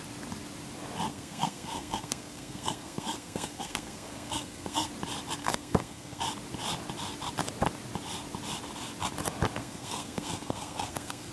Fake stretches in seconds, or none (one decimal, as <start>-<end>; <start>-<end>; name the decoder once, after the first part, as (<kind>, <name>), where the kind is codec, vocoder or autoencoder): 1.1-4.9 (codec, SNAC); 5.4-6.2; 9.6-11.3

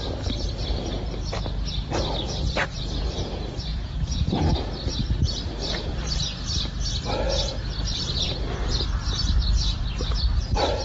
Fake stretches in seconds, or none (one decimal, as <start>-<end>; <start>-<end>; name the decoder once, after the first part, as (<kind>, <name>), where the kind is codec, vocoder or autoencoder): 3.7-4.5 (vocoder, Vocos)

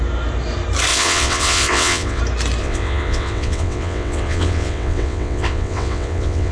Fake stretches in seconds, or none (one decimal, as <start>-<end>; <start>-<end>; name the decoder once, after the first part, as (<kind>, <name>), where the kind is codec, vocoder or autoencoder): 0.9-2.2 (vocoder, WaveNeXt); 2.6-6.5